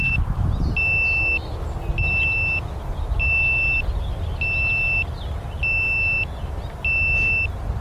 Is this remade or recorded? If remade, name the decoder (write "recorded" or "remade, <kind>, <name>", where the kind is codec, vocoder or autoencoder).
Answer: recorded